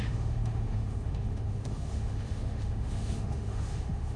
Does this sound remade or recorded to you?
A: remade